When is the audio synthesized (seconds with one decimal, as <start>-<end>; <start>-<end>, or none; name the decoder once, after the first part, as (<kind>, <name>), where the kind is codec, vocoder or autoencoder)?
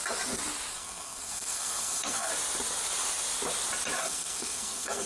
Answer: 0.7-2.3 (codec, SNAC); 4.0-5.1